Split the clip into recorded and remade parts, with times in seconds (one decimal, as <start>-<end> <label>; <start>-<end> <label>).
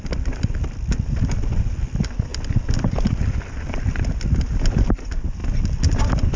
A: 0.0-6.4 recorded